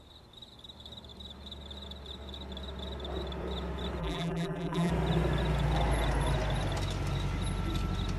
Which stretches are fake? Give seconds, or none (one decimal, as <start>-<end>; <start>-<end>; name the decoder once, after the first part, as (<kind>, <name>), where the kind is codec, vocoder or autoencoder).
4.0-4.9 (vocoder, BigVGAN v2)